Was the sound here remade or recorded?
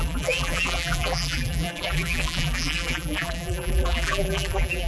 remade